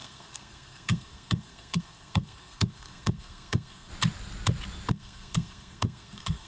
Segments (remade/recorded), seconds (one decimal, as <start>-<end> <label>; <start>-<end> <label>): 0.0-3.9 remade; 3.9-4.9 recorded; 4.9-6.5 remade